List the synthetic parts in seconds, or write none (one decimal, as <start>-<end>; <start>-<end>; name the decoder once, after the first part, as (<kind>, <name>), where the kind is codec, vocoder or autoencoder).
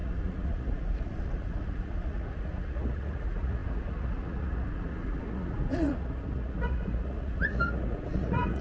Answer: 0.0-8.6 (vocoder, Vocos)